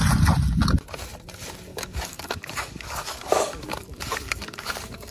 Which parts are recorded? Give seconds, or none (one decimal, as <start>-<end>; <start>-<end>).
0.0-1.7